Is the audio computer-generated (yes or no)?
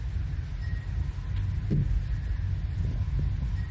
no